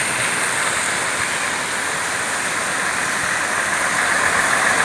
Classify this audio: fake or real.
real